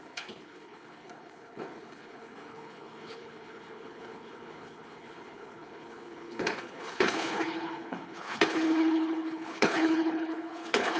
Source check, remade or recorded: remade